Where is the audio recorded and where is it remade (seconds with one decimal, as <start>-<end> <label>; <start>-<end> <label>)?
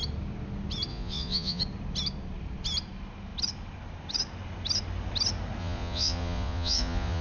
0.0-0.9 recorded; 0.9-1.6 remade; 1.6-5.6 recorded; 5.6-7.2 remade